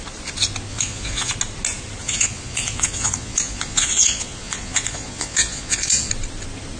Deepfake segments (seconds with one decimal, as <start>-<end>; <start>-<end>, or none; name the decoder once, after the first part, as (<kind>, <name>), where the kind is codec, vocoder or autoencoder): 0.7-1.3 (vocoder, Vocos); 2.0-6.1